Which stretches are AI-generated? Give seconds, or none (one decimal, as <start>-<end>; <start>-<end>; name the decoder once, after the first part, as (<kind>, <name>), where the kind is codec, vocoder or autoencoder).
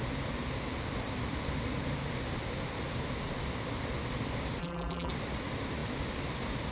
4.6-5.1 (vocoder, BigVGAN v2)